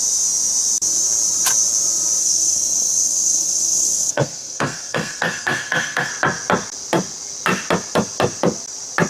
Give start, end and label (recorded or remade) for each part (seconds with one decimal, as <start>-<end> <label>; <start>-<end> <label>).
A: 0.0-2.2 recorded; 2.2-6.1 remade; 6.1-9.1 recorded